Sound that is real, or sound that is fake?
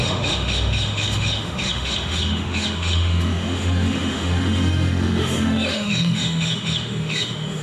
fake